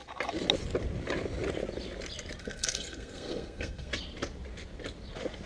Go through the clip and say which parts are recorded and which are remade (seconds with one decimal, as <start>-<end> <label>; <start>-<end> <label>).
0.0-2.4 recorded; 2.4-3.9 remade; 3.9-5.5 recorded